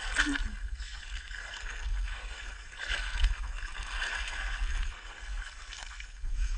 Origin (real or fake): fake